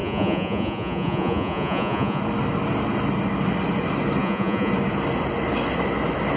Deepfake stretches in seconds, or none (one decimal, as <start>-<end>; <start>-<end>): 0.0-2.2; 4.2-4.7